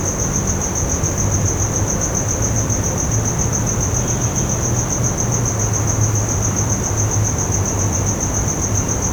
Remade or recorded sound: recorded